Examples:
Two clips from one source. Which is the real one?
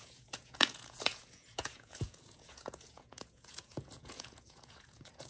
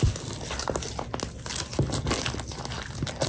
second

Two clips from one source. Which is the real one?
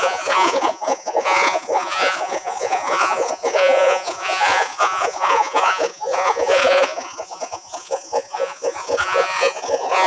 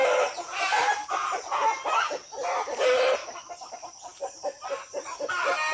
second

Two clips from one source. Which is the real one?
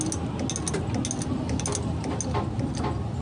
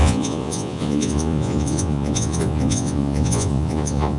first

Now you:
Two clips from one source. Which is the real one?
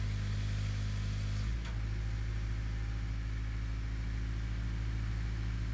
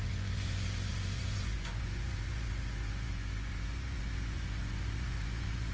first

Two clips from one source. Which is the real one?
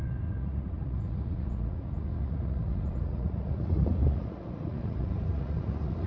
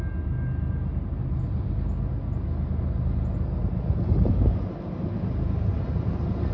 second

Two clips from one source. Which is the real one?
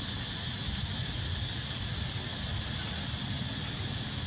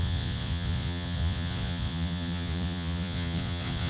first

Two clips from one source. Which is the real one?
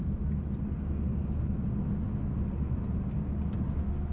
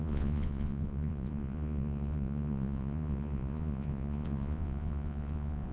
first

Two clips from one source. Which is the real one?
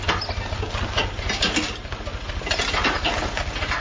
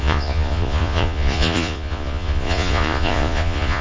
first